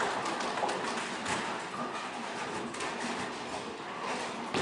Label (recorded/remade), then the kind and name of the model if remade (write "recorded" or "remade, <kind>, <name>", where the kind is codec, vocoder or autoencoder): recorded